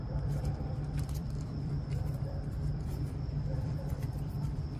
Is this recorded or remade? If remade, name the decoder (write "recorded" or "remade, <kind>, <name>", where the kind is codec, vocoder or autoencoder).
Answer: remade, vocoder, BigVGAN v2